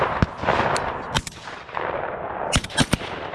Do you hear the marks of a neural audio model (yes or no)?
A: no